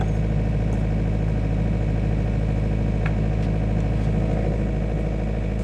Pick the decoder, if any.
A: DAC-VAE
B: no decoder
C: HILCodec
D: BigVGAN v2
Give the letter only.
B